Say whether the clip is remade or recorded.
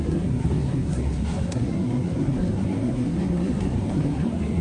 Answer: remade